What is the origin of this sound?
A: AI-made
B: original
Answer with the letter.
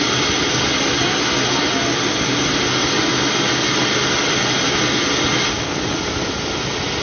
B